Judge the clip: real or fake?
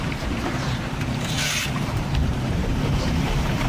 fake